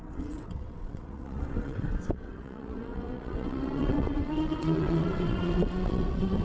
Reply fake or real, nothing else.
fake